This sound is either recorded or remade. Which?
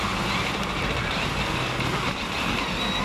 recorded